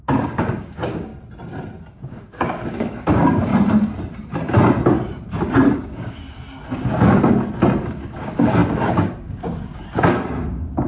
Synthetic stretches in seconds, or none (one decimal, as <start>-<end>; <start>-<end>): 0.0-1.1; 1.9-3.5; 5.8-6.2; 7.8-10.9